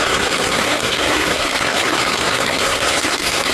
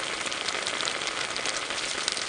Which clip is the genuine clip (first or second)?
second